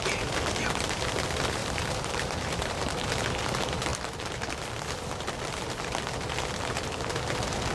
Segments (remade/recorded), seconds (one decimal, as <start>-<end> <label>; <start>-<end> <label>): 0.0-1.6 recorded; 1.6-3.1 remade; 3.1-7.7 recorded